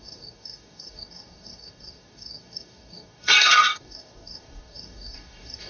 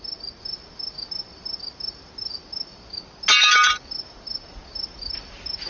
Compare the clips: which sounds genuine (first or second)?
second